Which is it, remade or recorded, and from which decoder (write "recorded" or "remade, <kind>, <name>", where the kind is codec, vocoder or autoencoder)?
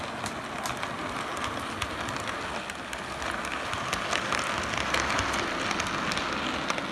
recorded